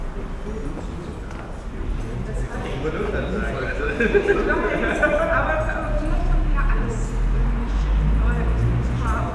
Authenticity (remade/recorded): recorded